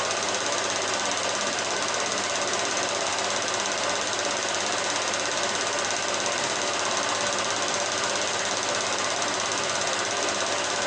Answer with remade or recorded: recorded